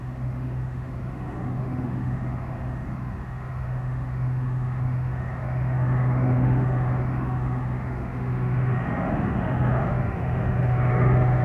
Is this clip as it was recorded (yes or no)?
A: no